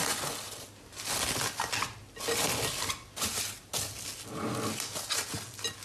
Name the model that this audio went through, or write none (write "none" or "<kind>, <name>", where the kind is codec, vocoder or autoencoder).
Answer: none